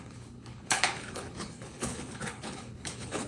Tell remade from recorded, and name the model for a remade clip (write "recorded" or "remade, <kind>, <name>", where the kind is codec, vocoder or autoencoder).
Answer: remade, codec, HILCodec